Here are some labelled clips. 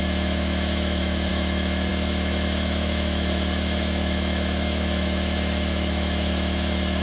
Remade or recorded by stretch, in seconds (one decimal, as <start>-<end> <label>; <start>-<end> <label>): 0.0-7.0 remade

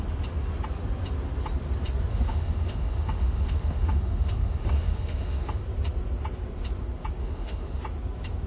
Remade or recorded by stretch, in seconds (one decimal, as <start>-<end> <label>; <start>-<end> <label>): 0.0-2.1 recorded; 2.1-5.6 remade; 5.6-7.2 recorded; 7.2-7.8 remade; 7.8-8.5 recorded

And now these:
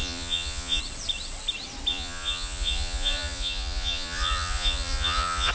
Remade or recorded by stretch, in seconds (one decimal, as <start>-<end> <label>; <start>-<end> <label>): 0.0-0.8 remade; 0.8-1.9 recorded; 1.9-5.5 remade

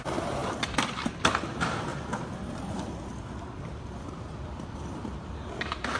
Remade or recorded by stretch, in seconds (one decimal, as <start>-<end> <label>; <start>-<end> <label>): 0.0-6.0 recorded

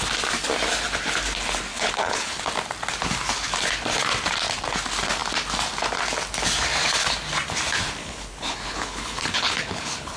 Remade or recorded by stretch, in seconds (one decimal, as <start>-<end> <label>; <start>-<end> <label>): 0.0-1.7 recorded; 1.7-2.4 remade; 2.4-8.0 recorded; 8.0-10.2 remade

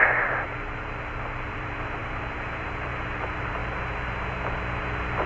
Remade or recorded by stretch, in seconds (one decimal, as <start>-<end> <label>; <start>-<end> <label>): 0.0-3.6 remade; 3.6-5.3 recorded

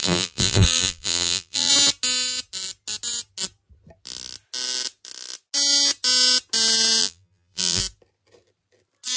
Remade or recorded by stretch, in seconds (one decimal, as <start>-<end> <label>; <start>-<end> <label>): 0.0-1.7 remade; 1.7-7.0 recorded; 7.0-7.8 remade; 7.8-9.2 recorded

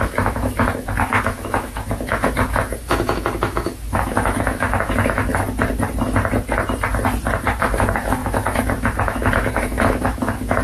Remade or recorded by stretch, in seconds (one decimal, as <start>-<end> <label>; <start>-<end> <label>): 0.0-5.3 remade; 5.3-7.6 recorded; 7.6-10.6 remade